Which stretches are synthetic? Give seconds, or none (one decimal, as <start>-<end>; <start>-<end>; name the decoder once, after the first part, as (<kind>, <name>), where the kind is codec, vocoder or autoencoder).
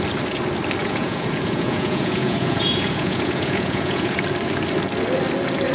0.8-4.2 (vocoder, Vocos)